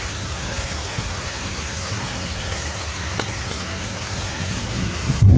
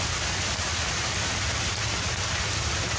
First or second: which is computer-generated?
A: first